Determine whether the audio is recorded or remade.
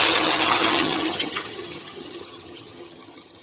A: remade